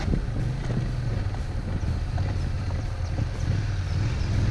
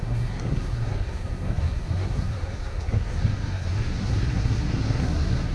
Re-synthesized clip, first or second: second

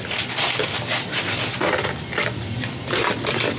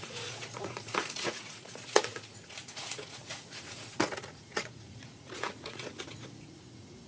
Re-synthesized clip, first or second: second